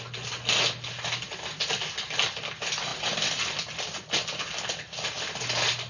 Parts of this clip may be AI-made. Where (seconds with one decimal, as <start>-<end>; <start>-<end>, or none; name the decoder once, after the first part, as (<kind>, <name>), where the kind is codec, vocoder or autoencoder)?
none